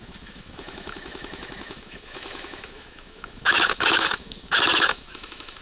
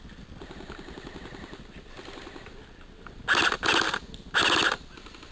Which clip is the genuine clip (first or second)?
second